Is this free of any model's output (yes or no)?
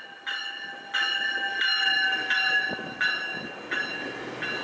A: yes